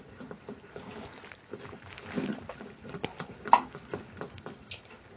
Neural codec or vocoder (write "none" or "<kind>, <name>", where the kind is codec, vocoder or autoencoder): none